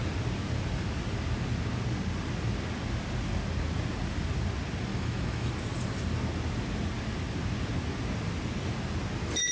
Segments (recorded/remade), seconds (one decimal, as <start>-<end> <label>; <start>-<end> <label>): 0.0-4.9 recorded; 4.9-5.5 remade; 5.5-9.5 recorded